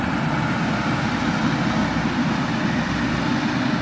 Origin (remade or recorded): recorded